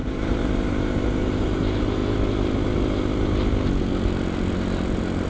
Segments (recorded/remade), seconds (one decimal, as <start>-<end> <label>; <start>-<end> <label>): 0.0-2.0 remade; 2.0-5.3 recorded